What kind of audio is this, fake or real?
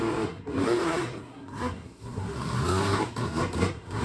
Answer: fake